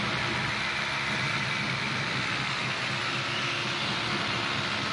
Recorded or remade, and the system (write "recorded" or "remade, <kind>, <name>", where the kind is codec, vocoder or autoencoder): recorded